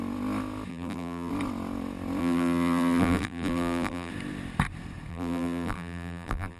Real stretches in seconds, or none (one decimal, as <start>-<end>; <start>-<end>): 0.0-0.7; 1.3-2.2; 4.1-5.1